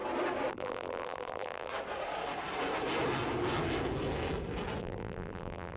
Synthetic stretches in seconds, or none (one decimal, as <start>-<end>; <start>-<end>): 0.5-1.7; 4.8-5.8